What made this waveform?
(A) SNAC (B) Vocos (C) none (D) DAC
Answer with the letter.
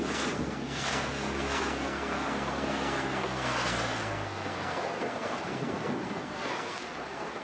A